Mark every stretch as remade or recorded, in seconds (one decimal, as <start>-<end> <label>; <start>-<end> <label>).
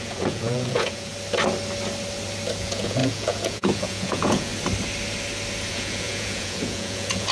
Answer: 0.0-1.1 remade; 1.1-2.6 recorded; 2.6-4.5 remade; 4.5-5.7 recorded; 5.7-7.3 remade